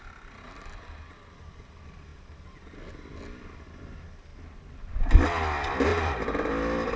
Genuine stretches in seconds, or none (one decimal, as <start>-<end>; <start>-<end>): 0.0-5.9; 6.5-7.0